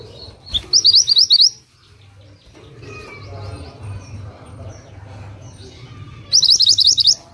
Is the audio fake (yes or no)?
no